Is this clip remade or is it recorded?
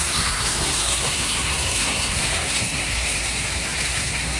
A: remade